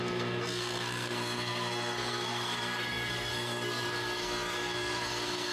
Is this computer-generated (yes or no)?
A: yes